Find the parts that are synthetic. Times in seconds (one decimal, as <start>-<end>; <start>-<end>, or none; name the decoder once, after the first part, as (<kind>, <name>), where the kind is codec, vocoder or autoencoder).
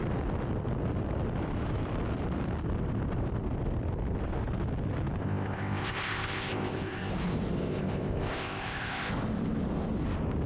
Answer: 5.2-7.1 (codec, ZipCodec); 7.6-9.1